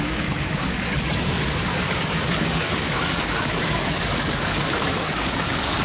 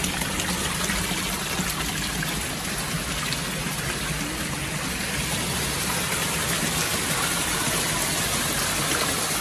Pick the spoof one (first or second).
first